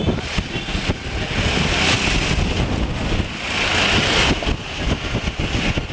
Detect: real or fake real